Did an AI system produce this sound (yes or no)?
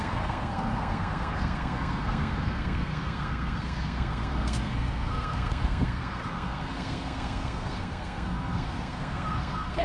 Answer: yes